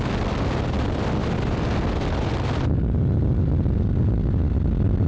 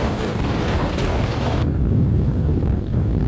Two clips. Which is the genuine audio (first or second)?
first